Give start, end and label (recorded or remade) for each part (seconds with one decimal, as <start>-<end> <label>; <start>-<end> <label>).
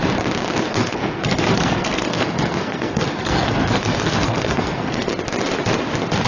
0.0-0.7 recorded; 0.7-5.1 remade; 5.1-6.3 recorded